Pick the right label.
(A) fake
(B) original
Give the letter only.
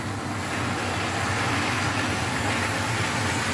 B